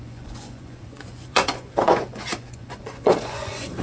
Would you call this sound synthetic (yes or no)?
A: yes